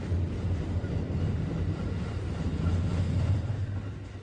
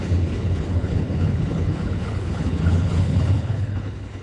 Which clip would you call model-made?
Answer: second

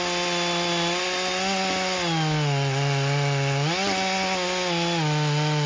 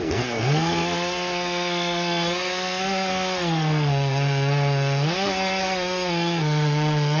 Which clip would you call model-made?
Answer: second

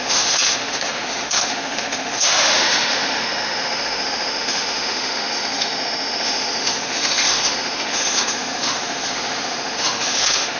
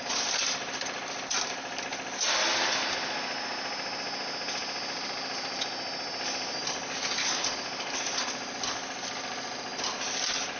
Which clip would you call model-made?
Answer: first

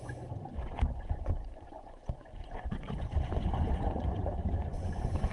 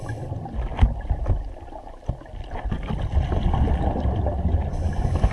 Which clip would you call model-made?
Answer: first